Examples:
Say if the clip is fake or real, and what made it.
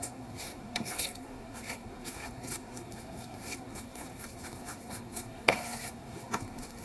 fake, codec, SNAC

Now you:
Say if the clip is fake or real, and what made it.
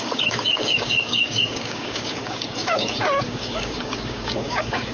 fake, codec, DAC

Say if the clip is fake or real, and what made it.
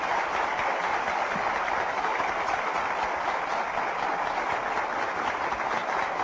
real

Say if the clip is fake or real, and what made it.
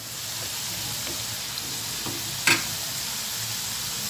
real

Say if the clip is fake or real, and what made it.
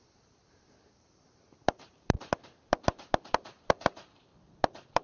fake, vocoder, BigVGAN v2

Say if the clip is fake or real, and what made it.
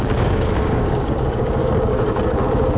fake, codec, DAC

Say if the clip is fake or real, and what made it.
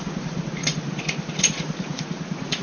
fake, vocoder, Vocos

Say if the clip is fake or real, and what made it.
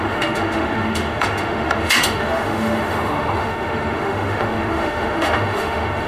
fake, autoencoder, DAC-VAE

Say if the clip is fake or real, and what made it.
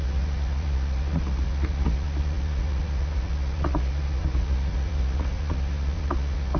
fake, vocoder, Vocos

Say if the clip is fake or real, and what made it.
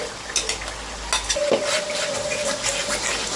real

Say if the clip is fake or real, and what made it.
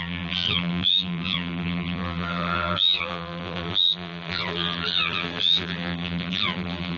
fake, vocoder, BigVGAN v2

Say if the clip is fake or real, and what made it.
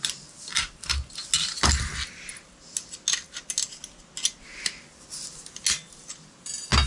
real